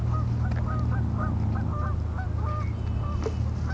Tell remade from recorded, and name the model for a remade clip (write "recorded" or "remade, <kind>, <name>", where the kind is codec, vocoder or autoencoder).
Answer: recorded